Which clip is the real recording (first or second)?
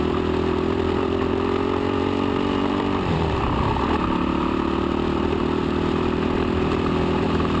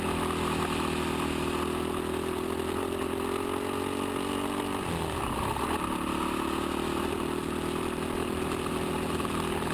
second